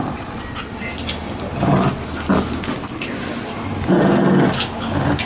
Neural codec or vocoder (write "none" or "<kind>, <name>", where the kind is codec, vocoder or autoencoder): none